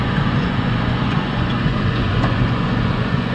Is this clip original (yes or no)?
no